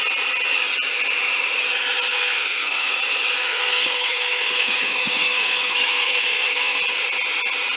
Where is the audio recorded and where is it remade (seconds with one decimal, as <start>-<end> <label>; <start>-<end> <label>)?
0.0-2.1 recorded; 2.1-3.0 remade; 3.0-3.4 recorded; 3.4-6.8 remade; 6.8-7.8 recorded